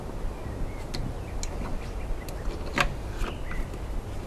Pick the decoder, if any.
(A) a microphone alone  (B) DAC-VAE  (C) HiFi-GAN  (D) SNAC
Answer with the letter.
A